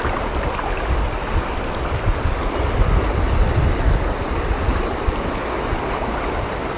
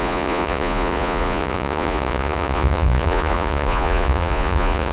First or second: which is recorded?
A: first